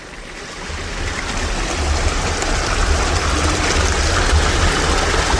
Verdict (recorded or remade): recorded